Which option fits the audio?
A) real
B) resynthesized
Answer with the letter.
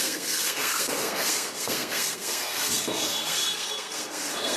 B